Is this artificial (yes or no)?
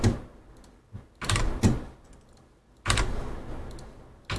no